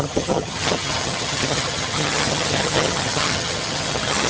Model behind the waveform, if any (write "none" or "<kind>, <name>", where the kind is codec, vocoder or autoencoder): vocoder, HiFi-GAN